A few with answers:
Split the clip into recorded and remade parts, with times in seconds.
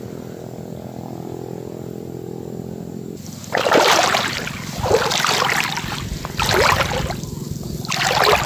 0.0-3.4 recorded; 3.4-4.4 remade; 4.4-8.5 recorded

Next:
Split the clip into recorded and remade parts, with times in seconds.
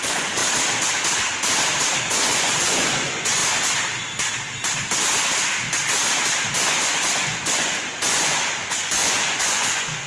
0.0-0.4 remade; 0.4-2.0 recorded; 2.0-3.4 remade; 3.4-6.7 recorded; 6.7-10.1 remade